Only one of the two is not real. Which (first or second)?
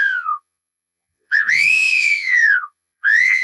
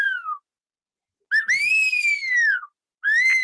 first